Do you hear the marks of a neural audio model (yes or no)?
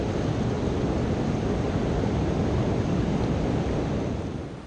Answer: no